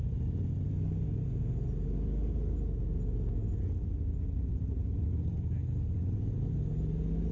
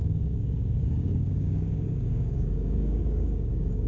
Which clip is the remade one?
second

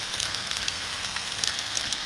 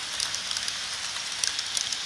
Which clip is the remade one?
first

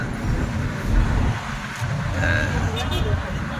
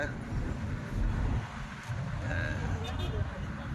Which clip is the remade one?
second